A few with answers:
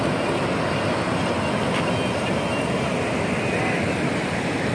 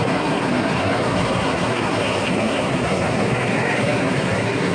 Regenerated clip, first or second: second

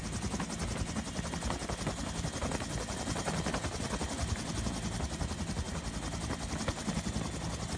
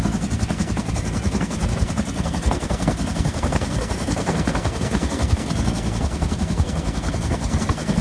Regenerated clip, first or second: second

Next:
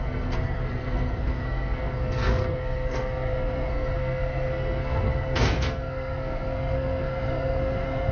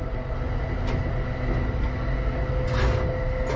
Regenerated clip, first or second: first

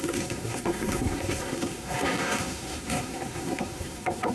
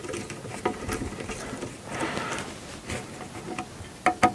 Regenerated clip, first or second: first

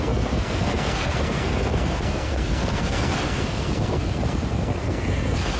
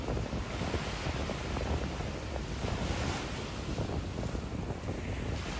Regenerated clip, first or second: first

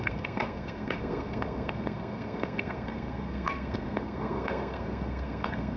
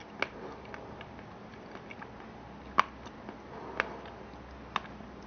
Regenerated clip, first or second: first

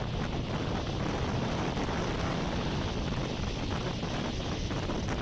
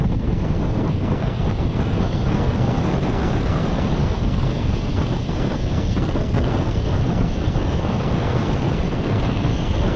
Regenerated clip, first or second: second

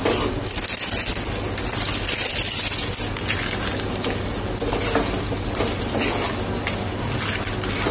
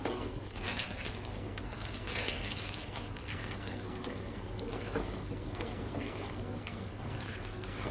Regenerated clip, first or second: second